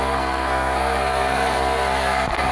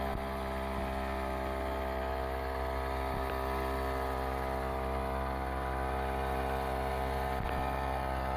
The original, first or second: second